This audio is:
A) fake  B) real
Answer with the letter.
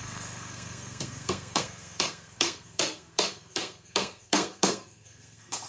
A